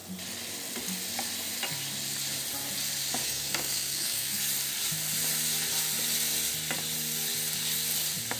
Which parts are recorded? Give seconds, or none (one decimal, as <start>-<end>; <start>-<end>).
0.0-3.2; 4.4-8.4